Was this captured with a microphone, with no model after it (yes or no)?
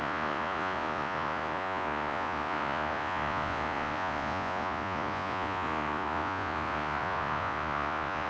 no